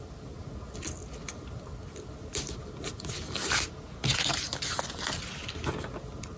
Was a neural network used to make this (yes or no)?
no